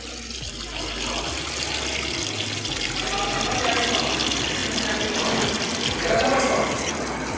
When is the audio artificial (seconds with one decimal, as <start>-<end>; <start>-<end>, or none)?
none